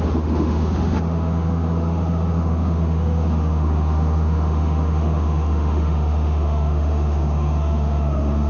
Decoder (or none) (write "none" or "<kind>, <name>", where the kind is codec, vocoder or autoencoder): autoencoder, DAC-VAE